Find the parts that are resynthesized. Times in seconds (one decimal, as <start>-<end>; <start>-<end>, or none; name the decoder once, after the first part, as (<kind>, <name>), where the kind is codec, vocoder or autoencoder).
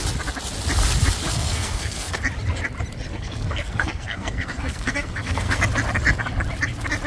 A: 1.3-2.2 (codec, SNAC); 3.1-5.6